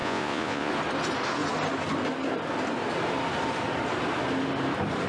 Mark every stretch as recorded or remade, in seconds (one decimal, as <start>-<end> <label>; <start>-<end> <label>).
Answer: 0.0-0.7 remade; 0.7-5.1 recorded